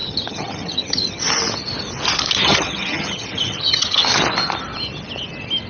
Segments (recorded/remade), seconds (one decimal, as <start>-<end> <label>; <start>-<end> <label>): 0.0-1.2 remade; 1.2-2.4 recorded; 2.4-4.2 remade; 4.2-5.7 recorded